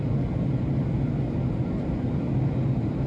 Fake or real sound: real